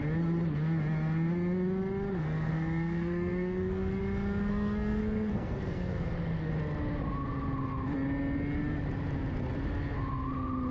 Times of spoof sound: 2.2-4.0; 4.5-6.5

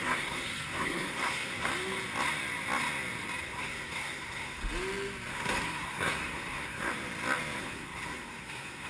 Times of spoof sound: 0.0-1.7; 3.4-4.6; 5.3-6.9; 7.6-8.9

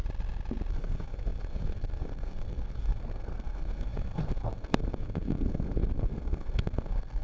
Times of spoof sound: 0.7-7.2

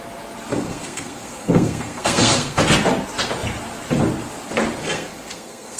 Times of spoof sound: 0.5-2.6; 4.8-5.8

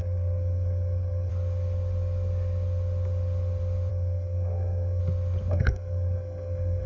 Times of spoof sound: 0.0-1.3; 3.9-5.0; 5.5-6.9